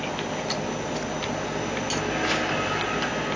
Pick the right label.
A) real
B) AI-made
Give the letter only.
A